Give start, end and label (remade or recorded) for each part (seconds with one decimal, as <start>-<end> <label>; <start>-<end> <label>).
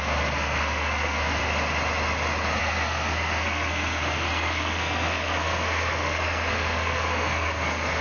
0.0-1.4 remade; 1.4-2.6 recorded; 2.6-8.0 remade